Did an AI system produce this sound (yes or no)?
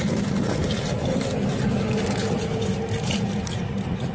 no